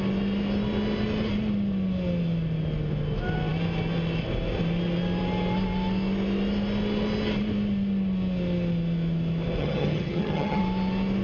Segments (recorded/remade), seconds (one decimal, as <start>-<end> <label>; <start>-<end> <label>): 0.0-9.6 recorded; 9.6-10.6 remade; 10.6-11.2 recorded